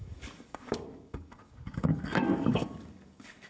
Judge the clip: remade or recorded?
remade